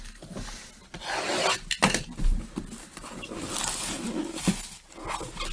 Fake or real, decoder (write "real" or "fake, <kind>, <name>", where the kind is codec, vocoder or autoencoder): real